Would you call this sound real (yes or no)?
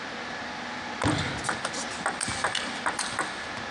yes